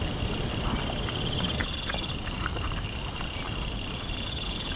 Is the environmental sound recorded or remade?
remade